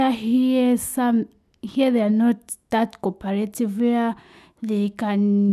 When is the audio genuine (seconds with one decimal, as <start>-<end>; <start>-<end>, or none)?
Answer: 0.0-2.1